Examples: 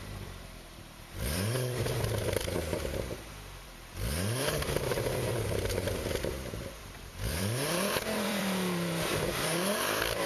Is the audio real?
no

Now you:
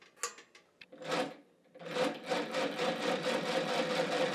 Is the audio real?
yes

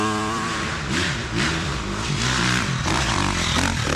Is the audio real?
no